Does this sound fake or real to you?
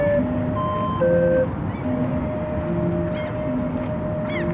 real